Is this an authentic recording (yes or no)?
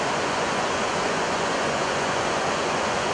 no